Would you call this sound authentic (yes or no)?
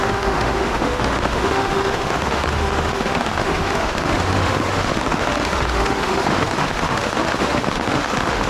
no